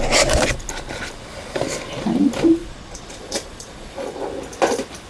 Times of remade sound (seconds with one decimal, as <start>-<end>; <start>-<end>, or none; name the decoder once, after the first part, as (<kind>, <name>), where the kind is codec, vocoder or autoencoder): 2.6-4.2 (vocoder, Vocos)